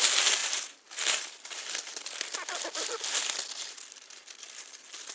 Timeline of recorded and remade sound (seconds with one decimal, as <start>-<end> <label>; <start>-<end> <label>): 0.0-5.1 recorded